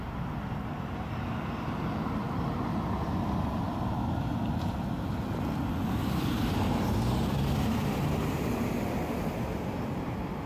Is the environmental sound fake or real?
real